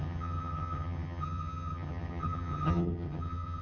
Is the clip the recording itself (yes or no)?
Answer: no